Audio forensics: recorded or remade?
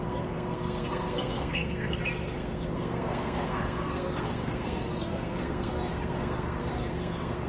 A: remade